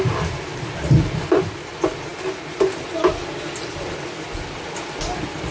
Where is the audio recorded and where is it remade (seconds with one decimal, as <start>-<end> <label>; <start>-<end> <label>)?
0.0-5.5 recorded